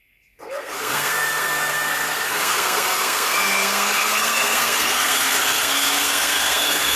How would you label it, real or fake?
fake